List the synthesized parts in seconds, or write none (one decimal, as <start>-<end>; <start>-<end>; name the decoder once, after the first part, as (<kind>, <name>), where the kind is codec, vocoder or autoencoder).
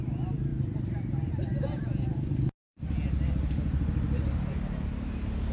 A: none